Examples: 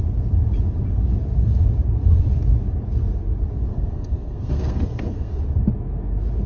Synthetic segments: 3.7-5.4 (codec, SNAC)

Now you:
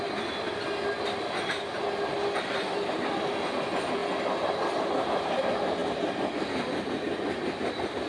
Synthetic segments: none

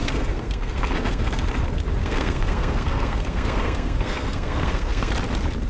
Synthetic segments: 0.0-1.4 (codec, SNAC); 2.0-5.1

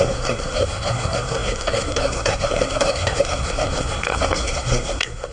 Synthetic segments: 0.0-5.3 (codec, SNAC)

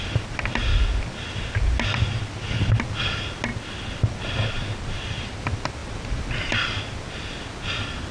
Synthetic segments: none